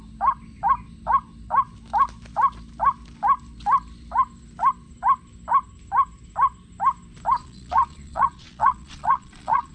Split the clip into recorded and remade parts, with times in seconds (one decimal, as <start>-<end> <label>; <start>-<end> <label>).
0.0-7.4 recorded; 7.4-9.7 remade